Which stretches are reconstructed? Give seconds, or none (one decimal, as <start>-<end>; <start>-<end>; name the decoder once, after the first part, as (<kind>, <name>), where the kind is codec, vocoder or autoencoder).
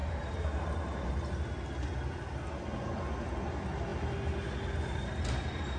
0.0-1.1 (vocoder, BigVGAN v2)